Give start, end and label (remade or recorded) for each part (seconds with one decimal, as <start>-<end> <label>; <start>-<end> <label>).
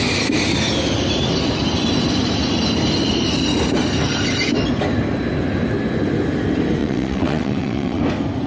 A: 0.0-6.8 recorded; 6.8-8.0 remade; 8.0-8.5 recorded